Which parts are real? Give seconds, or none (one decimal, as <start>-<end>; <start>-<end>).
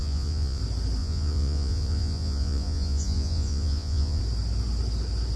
0.6-1.0; 4.2-5.4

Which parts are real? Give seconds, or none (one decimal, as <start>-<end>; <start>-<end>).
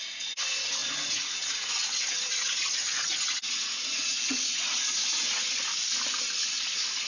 5.7-6.6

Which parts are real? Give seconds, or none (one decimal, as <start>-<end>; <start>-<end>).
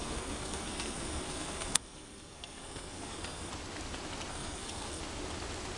3.5-4.3; 5.0-5.8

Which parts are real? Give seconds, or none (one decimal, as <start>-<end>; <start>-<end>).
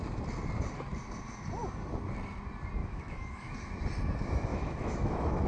0.0-2.8; 3.5-4.5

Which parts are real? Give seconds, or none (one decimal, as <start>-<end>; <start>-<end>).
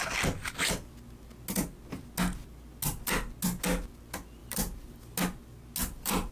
0.0-4.4; 5.0-5.8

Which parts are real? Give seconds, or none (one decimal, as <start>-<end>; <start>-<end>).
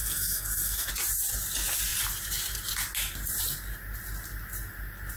0.9-5.2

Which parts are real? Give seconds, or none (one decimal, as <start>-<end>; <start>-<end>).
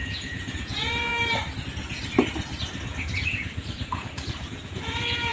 1.1-1.6; 2.0-2.6